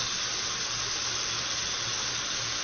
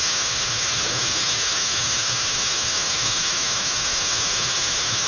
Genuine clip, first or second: first